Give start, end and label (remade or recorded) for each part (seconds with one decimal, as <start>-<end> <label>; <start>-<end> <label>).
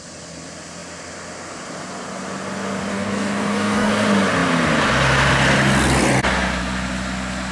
0.0-2.9 recorded; 2.9-3.9 remade; 3.9-7.5 recorded